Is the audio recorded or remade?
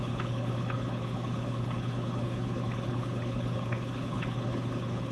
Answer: remade